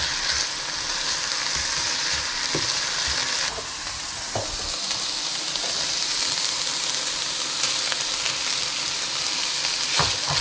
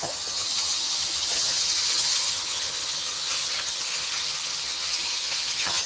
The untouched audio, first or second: first